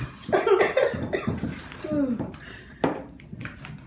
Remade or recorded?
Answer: recorded